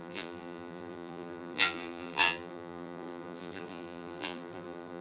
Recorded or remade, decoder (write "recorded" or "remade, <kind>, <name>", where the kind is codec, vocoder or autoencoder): remade, vocoder, BigVGAN v2